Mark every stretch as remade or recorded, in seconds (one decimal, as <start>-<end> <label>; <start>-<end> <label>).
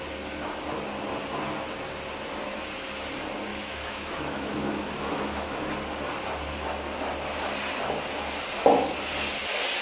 0.0-3.5 recorded; 3.5-5.7 remade; 5.7-9.8 recorded